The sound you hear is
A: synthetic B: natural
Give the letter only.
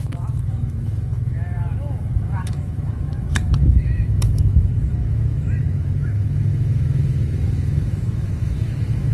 A